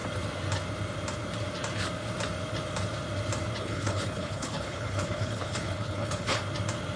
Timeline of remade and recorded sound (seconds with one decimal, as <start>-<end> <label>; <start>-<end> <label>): 0.0-3.6 recorded; 3.6-6.4 remade; 6.4-7.0 recorded